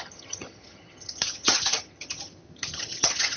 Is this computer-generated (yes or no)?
yes